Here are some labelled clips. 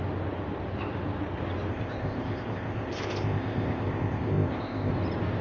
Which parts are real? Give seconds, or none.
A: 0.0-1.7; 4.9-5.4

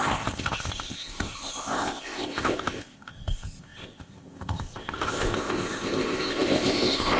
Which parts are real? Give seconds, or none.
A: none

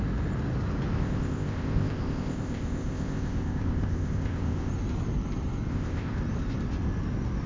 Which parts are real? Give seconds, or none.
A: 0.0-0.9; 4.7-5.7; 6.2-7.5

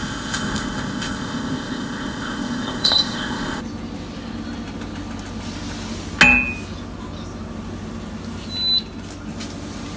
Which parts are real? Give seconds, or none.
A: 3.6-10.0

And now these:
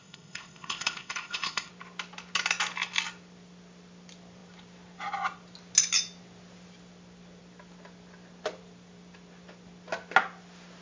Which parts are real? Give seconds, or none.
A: 1.7-10.8

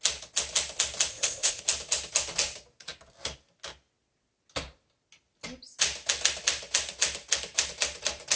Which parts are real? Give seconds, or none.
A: 0.0-1.1; 1.6-8.4

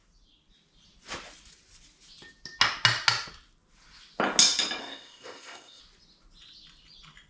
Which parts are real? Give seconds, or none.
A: 0.0-4.8; 5.8-7.3

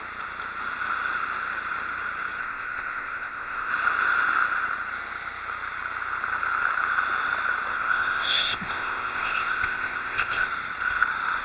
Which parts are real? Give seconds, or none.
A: 0.0-2.4; 3.7-7.7; 10.5-11.4